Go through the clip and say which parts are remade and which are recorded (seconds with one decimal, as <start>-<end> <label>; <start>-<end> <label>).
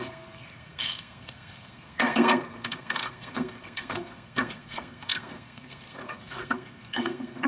0.0-7.5 remade